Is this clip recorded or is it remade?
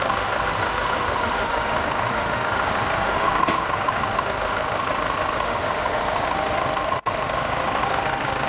remade